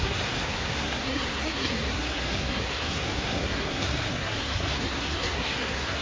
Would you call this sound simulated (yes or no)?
yes